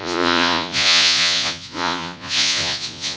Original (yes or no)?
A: no